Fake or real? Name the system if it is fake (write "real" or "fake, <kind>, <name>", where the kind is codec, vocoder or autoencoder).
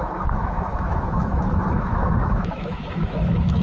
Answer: fake, autoencoder, DAC-VAE